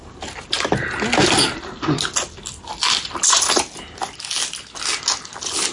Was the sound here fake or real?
real